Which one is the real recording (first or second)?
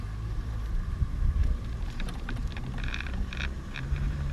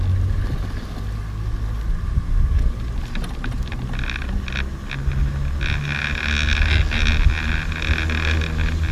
second